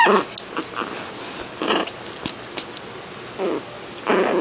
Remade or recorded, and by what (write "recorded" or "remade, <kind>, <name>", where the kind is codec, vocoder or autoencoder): recorded